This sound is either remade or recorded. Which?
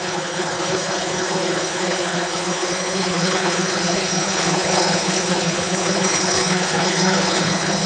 remade